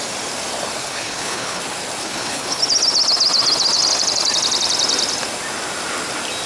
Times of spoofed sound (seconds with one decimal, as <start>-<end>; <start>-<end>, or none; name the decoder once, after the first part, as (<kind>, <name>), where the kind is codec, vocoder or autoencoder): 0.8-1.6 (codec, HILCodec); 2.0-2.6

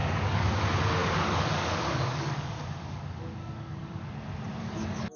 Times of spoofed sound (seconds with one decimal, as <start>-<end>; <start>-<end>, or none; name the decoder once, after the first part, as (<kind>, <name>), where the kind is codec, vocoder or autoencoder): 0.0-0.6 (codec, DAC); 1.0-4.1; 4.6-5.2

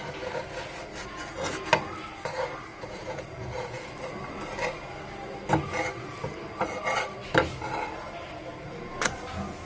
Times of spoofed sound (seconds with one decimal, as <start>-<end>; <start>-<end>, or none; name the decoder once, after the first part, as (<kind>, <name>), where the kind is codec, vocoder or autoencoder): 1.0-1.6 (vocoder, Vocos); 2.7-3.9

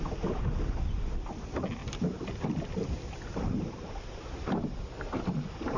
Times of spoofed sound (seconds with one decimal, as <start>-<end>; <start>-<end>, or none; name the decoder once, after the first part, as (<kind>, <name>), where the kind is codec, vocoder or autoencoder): none